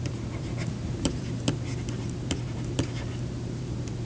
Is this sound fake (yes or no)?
yes